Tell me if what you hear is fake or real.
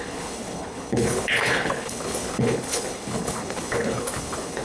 fake